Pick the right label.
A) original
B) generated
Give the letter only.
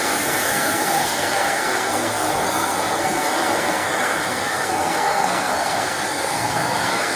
B